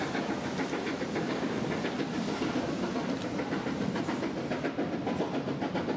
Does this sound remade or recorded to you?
recorded